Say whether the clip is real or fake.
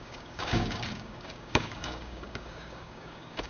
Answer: fake